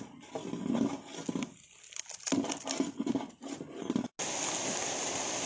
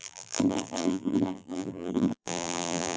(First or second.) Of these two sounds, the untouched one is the first